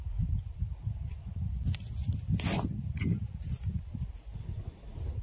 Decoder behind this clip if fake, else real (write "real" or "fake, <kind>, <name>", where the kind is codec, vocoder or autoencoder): real